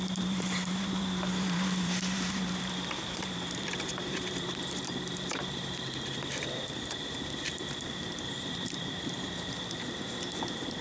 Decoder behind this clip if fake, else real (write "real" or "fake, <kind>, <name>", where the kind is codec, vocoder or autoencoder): fake, vocoder, BigVGAN v2